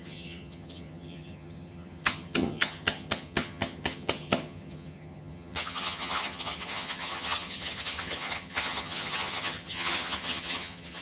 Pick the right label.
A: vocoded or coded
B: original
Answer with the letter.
A